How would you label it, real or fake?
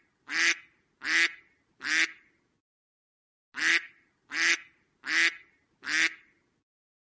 real